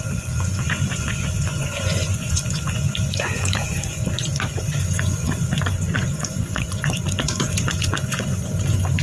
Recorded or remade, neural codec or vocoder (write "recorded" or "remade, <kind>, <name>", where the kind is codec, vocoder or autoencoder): remade, vocoder, Vocos